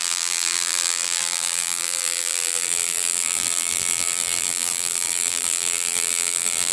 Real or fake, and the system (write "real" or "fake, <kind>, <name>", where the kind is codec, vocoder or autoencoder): fake, vocoder, BigVGAN v2